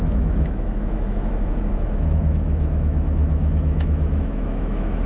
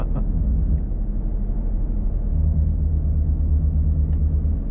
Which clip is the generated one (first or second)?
first